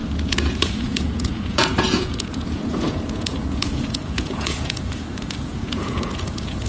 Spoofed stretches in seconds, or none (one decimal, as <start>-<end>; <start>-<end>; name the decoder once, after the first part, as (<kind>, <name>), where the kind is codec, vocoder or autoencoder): 0.0-6.7 (vocoder, Vocos)